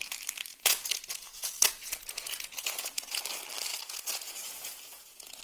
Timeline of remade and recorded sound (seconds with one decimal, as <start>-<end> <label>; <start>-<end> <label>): 0.0-0.5 recorded; 0.5-3.2 remade; 3.2-3.7 recorded; 3.7-5.4 remade